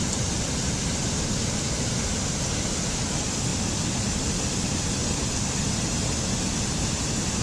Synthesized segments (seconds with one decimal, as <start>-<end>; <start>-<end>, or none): none